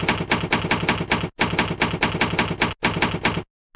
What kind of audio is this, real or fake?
real